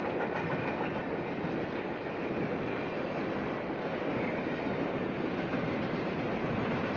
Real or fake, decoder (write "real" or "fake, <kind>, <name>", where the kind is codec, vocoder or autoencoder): real